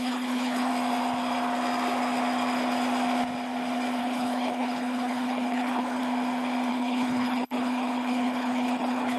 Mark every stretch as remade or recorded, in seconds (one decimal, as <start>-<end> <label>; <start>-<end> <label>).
0.0-0.7 remade; 0.7-4.0 recorded; 4.0-6.0 remade; 6.0-6.7 recorded; 6.7-9.2 remade